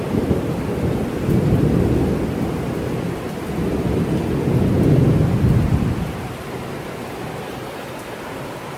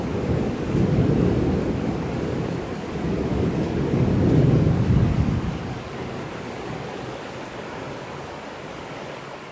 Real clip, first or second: first